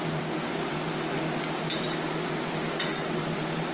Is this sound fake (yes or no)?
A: no